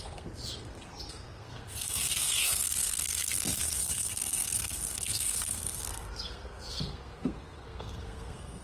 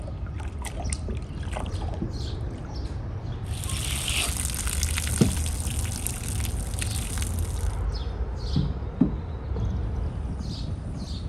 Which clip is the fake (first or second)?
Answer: first